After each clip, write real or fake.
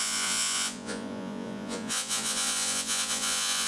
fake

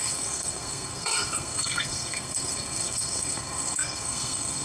fake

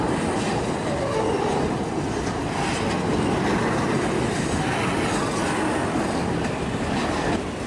real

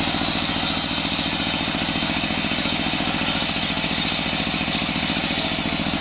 real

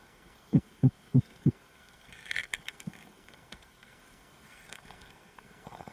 fake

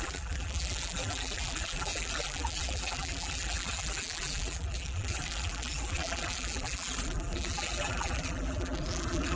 fake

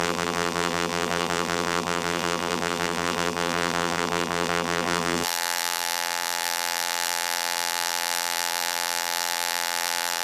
fake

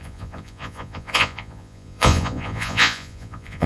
fake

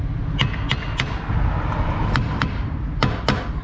real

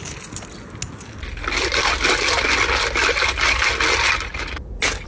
real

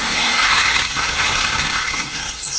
fake